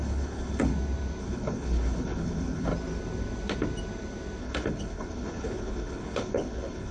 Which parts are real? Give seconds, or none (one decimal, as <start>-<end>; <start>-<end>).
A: 0.7-1.2; 2.7-4.4